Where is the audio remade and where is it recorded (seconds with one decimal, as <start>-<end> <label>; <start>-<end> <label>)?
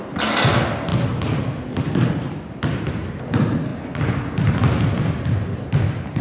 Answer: 0.0-6.2 recorded